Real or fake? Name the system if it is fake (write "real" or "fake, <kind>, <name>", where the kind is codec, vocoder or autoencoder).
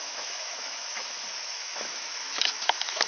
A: fake, autoencoder, DAC-VAE